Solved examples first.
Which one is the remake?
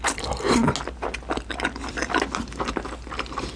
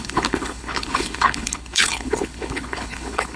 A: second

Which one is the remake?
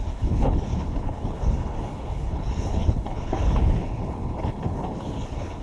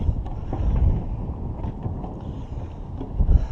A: first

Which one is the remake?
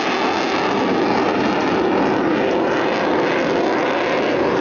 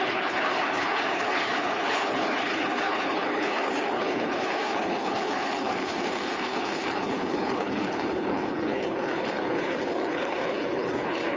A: second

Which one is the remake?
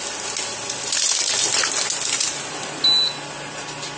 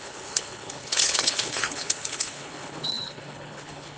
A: second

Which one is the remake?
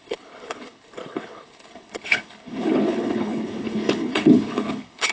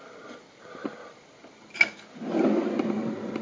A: first